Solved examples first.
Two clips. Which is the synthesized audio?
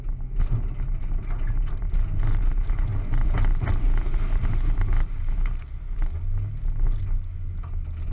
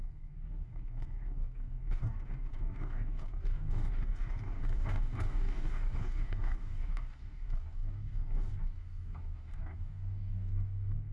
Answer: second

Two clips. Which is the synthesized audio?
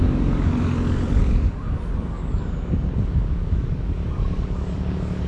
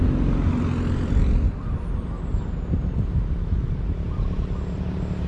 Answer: first